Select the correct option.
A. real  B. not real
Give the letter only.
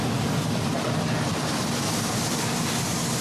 B